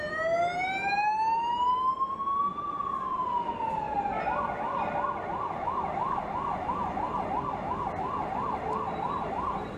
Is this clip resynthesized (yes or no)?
no